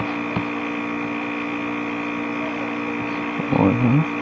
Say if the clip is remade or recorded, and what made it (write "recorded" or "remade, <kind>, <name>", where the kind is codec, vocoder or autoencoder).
recorded